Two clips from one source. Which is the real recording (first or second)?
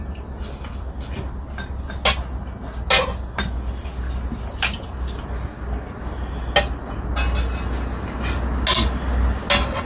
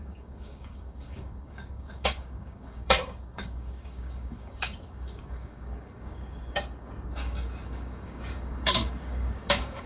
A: first